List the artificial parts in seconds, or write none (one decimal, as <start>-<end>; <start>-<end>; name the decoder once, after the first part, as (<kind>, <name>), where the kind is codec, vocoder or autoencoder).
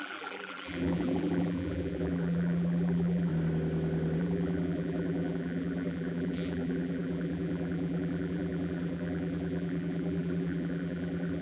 0.0-3.3 (vocoder, BigVGAN v2); 4.2-11.4